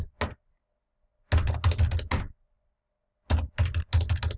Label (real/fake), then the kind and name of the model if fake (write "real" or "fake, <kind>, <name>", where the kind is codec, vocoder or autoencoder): real